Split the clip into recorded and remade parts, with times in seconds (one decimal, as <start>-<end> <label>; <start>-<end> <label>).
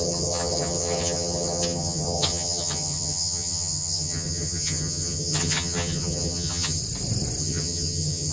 0.0-6.8 remade; 6.8-7.4 recorded; 7.4-8.3 remade